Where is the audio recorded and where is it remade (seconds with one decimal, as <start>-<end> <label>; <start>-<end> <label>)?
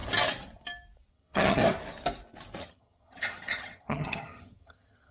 0.0-1.1 recorded; 1.1-1.6 remade; 1.6-2.6 recorded; 2.6-5.1 remade